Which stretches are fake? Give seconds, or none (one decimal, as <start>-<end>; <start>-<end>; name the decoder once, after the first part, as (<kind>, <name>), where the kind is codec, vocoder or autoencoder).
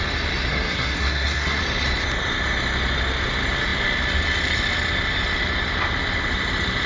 0.5-1.6 (codec, SNAC)